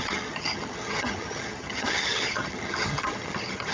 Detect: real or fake fake